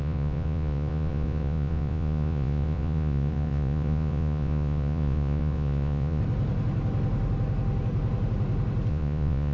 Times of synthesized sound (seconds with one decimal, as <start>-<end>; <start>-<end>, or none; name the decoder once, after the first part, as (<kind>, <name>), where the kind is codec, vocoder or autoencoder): 0.0-6.2 (vocoder, Vocos); 8.9-9.5